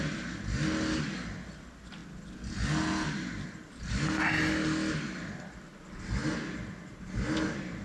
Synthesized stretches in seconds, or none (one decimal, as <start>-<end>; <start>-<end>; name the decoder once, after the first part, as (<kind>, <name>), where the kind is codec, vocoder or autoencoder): none